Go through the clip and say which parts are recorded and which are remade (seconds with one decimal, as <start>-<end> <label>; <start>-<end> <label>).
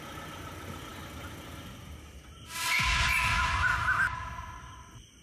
0.0-5.2 recorded